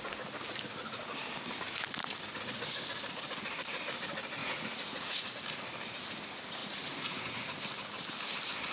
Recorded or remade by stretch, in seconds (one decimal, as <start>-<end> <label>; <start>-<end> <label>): 0.0-4.4 recorded; 4.4-5.3 remade; 5.3-6.6 recorded; 6.6-7.3 remade; 7.3-8.7 recorded